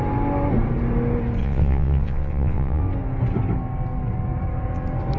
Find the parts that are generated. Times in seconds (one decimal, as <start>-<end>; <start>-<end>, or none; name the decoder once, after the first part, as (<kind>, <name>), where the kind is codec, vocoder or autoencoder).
1.4-2.8 (vocoder, WaveNeXt)